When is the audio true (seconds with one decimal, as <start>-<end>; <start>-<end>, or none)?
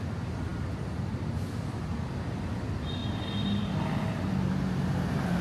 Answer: 0.0-0.5; 2.0-3.0; 3.8-5.4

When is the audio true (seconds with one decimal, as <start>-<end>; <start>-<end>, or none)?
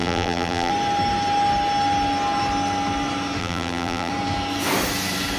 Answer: 0.7-3.4; 4.1-5.4